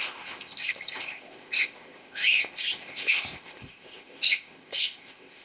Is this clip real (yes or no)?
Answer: no